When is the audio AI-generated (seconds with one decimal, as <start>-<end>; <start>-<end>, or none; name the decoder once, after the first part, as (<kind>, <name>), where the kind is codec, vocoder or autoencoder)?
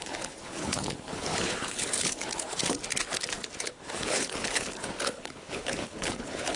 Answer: 0.0-2.6 (codec, HILCodec); 3.6-6.6